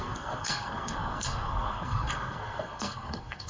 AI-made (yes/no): yes